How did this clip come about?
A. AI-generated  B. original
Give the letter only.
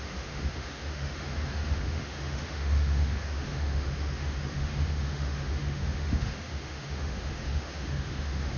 A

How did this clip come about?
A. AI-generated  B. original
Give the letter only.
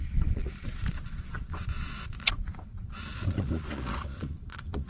A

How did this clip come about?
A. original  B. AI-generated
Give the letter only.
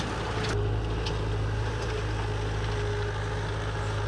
A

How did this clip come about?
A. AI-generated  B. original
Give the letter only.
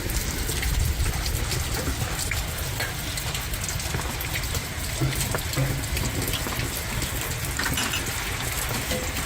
B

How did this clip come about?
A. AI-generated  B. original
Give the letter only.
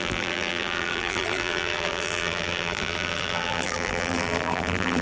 A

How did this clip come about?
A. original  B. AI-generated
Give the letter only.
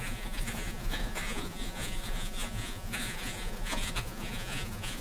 B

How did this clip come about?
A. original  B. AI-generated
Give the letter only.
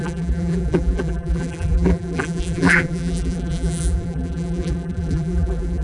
B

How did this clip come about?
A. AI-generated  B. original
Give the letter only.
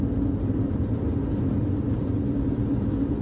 B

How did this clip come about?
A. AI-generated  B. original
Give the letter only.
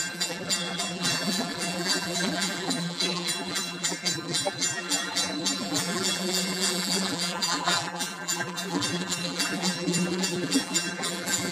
A